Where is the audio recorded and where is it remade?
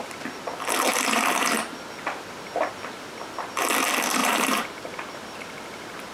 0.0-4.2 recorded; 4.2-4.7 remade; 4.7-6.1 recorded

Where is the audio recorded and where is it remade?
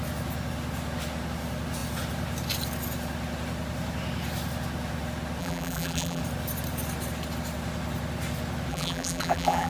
0.0-5.4 recorded; 5.4-6.2 remade; 6.2-8.7 recorded; 8.7-9.7 remade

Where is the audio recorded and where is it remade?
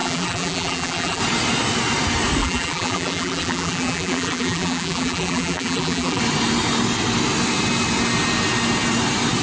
0.0-1.2 remade; 1.2-2.4 recorded; 2.4-6.2 remade; 6.2-9.4 recorded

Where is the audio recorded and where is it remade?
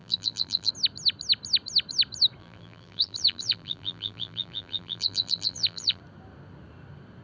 0.0-0.7 remade; 0.7-2.4 recorded; 2.4-6.0 remade; 6.0-7.2 recorded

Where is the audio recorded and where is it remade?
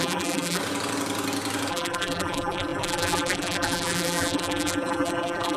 0.0-0.6 remade; 0.6-1.7 recorded; 1.7-5.6 remade